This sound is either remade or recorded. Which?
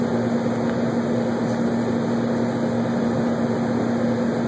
recorded